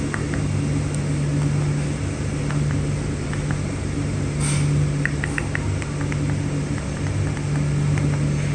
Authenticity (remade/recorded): recorded